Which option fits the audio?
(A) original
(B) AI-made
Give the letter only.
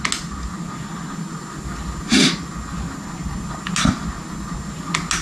A